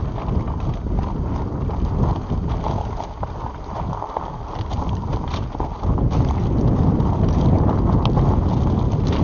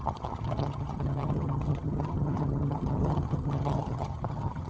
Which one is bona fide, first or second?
first